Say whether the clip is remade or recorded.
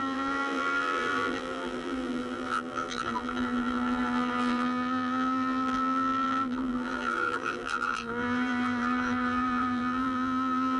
remade